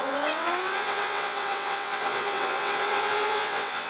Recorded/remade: remade